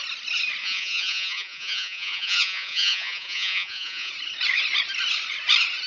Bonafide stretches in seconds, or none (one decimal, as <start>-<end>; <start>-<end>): 0.0-0.6; 4.1-5.9